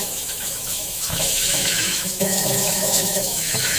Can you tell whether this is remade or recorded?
remade